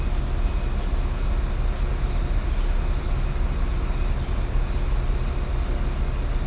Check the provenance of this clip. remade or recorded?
recorded